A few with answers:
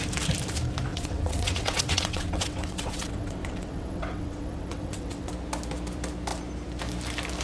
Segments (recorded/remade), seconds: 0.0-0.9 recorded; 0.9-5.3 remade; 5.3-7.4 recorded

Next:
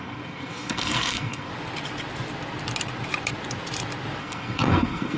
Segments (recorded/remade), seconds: 0.0-1.5 remade; 1.5-4.2 recorded; 4.2-5.2 remade